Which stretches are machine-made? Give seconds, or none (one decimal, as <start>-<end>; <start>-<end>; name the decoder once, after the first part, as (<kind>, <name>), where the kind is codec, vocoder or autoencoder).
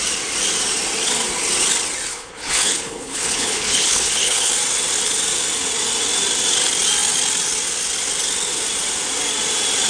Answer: 2.1-4.5 (codec, HILCodec)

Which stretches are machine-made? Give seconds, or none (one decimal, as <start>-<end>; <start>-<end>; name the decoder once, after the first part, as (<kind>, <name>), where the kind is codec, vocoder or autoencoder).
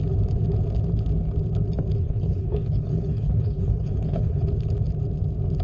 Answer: 2.0-4.4 (codec, HILCodec)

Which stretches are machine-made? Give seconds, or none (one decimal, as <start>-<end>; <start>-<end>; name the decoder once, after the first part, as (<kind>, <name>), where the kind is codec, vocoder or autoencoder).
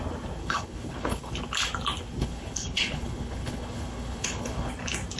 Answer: 0.4-1.3 (codec, HILCodec); 2.2-4.7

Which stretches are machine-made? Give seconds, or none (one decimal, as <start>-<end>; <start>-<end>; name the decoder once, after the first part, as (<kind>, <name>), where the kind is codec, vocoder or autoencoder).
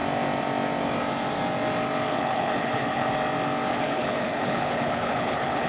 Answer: 2.1-3.1 (codec, HILCodec); 3.7-5.7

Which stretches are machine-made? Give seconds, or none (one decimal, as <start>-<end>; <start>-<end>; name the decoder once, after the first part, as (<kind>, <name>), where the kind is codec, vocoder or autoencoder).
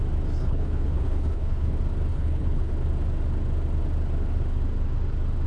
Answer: 0.4-1.7 (codec, HILCodec); 2.1-2.7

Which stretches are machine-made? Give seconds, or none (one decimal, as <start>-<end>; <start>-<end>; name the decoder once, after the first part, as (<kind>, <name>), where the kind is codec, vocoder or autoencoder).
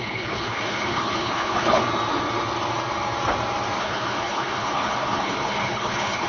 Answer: 0.0-1.8 (codec, HILCodec); 3.8-6.3